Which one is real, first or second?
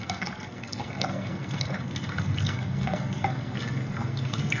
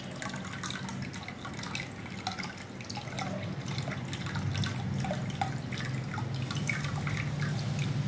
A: second